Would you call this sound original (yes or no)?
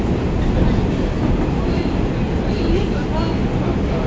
yes